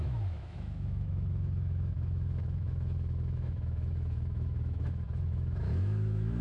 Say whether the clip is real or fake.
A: fake